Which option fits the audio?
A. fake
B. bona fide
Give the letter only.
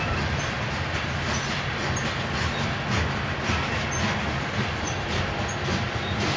B